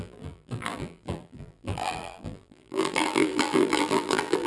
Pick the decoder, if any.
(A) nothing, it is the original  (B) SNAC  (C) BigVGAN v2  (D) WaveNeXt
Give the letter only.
C